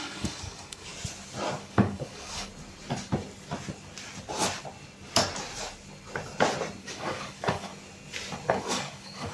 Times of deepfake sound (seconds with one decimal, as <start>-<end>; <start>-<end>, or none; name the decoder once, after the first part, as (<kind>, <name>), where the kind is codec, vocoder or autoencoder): 0.0-0.9 (codec, DAC); 1.6-2.5; 6.8-7.7; 8.5-9.3